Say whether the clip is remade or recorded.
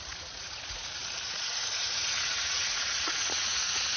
remade